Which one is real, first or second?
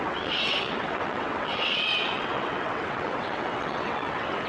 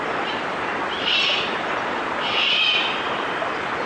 second